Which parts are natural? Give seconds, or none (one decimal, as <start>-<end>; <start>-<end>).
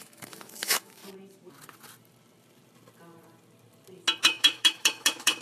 1.0-4.2